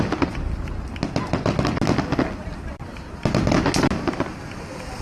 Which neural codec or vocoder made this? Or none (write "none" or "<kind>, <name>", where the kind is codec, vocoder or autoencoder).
none